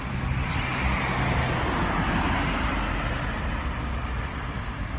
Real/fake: real